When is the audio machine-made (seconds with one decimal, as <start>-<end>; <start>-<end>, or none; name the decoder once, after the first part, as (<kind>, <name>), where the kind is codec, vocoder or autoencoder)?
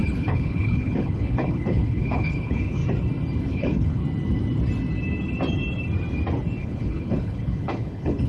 0.0-2.8 (codec, HILCodec); 3.4-4.0; 6.6-8.3